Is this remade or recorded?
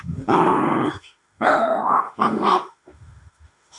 remade